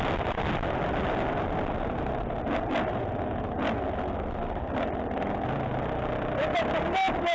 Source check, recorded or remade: recorded